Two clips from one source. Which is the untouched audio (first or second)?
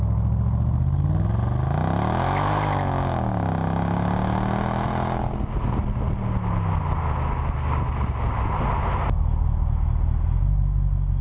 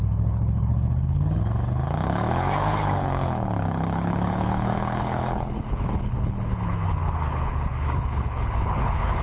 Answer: first